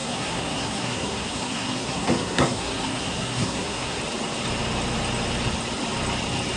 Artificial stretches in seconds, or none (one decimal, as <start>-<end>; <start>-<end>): 0.0-4.0